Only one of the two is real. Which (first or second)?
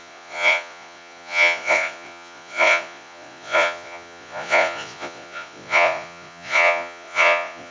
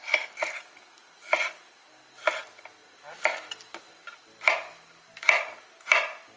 second